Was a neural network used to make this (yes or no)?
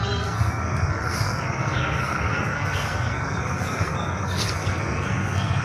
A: yes